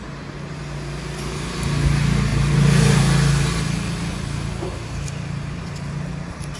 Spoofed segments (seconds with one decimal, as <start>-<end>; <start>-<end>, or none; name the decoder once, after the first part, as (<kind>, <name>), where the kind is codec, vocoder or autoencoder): 2.3-3.0 (vocoder, BigVGAN v2)